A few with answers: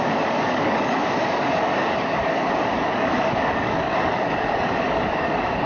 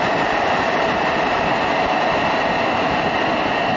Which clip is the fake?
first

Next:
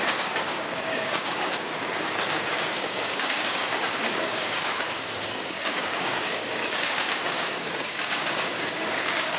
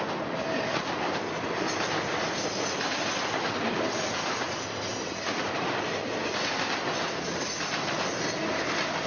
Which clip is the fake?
first